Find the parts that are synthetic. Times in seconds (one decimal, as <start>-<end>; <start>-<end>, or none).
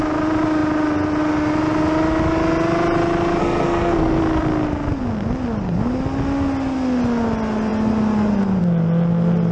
3.4-4.2